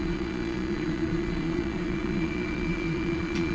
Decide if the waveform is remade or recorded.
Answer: remade